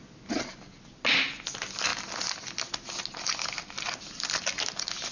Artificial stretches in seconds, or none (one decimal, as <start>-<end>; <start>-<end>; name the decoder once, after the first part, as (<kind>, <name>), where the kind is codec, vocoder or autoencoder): none